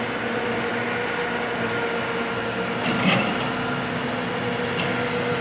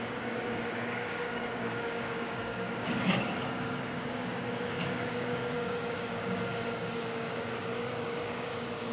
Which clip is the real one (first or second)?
first